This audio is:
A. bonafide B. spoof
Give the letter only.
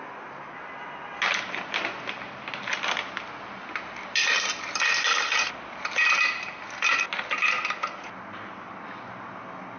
A